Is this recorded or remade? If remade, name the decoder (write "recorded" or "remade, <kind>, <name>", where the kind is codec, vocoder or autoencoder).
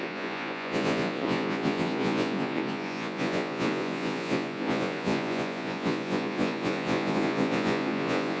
remade, vocoder, Vocos